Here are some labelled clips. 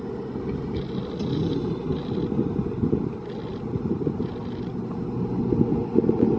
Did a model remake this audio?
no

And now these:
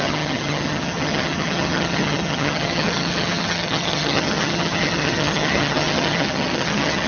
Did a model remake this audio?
yes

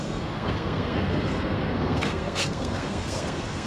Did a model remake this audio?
yes